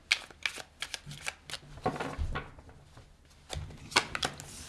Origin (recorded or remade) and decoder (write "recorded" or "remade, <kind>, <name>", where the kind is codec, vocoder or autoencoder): recorded